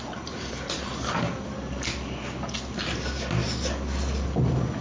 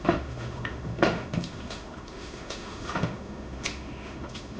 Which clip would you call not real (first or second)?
second